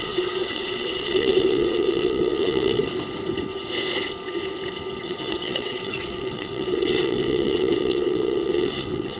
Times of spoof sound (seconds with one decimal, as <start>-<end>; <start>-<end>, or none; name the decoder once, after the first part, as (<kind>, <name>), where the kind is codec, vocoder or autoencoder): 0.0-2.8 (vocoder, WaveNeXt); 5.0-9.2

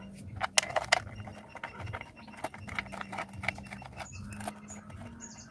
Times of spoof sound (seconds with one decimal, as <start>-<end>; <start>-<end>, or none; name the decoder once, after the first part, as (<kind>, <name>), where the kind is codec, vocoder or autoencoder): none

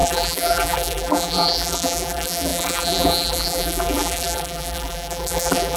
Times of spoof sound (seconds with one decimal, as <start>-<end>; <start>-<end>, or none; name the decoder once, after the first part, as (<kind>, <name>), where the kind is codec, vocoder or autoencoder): 0.0-5.8 (vocoder, BigVGAN v2)

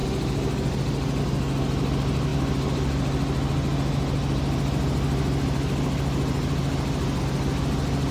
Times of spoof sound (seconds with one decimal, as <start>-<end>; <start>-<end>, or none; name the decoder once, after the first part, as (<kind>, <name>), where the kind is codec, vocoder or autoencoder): none